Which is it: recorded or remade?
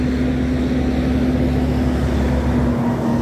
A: recorded